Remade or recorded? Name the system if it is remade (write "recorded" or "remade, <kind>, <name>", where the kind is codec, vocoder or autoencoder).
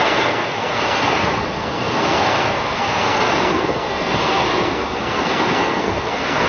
remade, codec, SNAC